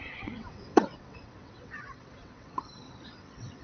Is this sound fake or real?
fake